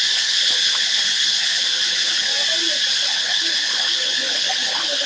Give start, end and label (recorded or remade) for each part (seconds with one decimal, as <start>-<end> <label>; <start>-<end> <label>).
0.0-2.3 remade; 2.3-2.9 recorded; 2.9-5.1 remade